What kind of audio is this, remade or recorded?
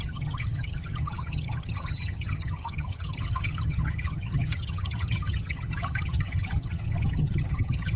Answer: remade